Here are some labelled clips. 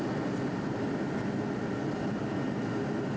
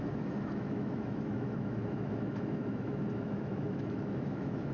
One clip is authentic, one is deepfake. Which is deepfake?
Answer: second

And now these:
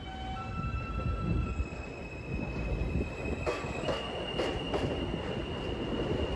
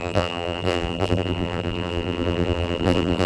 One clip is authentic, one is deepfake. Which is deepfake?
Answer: second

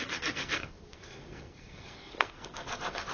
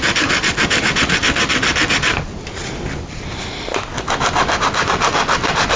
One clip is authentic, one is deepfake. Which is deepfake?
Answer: first